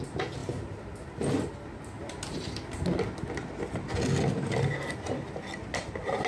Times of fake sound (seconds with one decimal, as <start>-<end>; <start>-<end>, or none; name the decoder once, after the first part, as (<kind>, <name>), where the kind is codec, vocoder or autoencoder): none